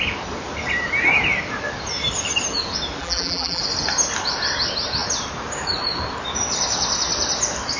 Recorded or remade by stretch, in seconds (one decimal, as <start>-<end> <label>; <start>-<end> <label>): 0.0-3.0 recorded; 3.0-3.6 remade; 3.6-7.8 recorded